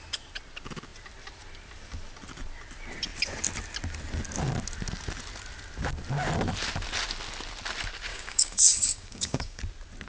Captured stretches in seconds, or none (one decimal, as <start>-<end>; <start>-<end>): 0.0-8.1; 9.6-10.1